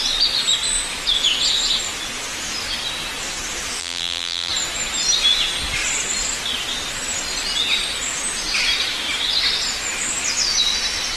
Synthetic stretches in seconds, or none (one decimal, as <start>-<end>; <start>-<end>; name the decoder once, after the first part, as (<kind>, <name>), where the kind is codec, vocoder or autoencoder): 3.8-4.5 (vocoder, BigVGAN v2)